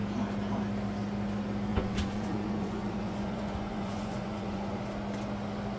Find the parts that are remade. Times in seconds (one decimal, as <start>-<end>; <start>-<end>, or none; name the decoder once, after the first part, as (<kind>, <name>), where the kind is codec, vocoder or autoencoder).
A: 1.7-4.8 (vocoder, Vocos)